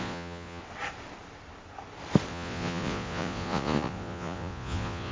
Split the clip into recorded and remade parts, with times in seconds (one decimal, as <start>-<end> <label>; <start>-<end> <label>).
0.0-0.6 remade; 0.6-2.3 recorded; 2.3-5.1 remade